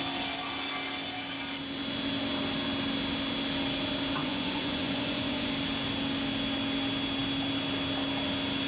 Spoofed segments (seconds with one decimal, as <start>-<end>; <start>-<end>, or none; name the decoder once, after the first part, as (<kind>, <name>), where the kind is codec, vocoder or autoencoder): 4.2-5.5 (vocoder, Vocos)